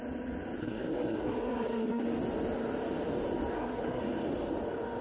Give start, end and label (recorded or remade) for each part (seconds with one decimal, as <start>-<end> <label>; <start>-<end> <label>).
0.0-0.6 recorded; 0.6-2.0 remade; 2.0-3.5 recorded; 3.5-4.0 remade; 4.0-5.0 recorded